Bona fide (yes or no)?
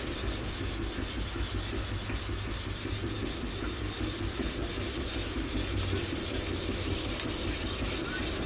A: yes